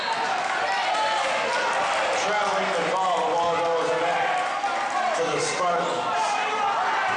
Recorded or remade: recorded